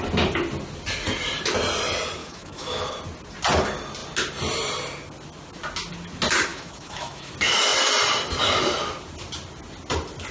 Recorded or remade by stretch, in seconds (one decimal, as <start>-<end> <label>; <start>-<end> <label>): 0.0-2.2 recorded; 2.2-3.0 remade; 3.0-6.5 recorded; 6.5-7.3 remade; 7.3-10.3 recorded